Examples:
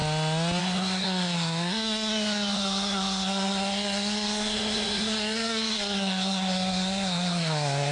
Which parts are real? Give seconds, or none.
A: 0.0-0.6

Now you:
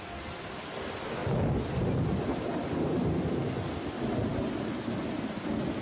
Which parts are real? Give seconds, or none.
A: 0.0-5.8

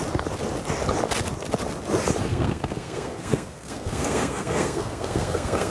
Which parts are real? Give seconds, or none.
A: 0.0-2.3